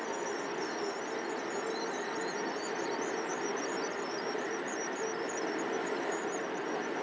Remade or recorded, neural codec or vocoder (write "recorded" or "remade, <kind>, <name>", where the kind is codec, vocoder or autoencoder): remade, vocoder, BigVGAN v2